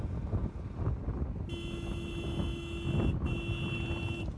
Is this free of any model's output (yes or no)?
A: yes